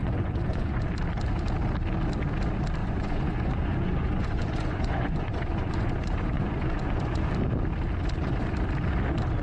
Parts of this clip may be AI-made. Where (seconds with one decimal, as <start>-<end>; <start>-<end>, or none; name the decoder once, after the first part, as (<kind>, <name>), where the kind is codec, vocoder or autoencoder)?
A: 0.0-0.8 (vocoder, Vocos); 2.8-7.3